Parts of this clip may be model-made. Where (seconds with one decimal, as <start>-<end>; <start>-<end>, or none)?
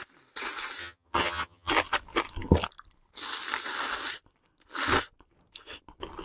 0.8-1.7